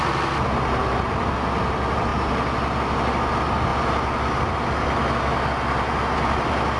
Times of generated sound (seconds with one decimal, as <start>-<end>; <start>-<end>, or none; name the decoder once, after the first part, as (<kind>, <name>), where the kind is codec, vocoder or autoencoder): none